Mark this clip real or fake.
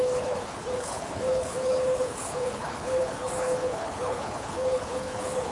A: fake